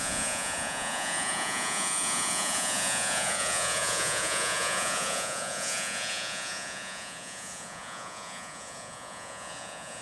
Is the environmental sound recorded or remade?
remade